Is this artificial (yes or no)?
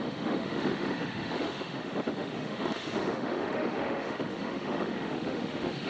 yes